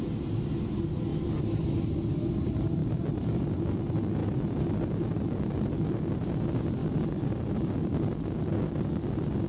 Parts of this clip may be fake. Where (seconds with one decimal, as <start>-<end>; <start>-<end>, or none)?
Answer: 2.8-3.4; 4.2-6.1; 6.8-8.4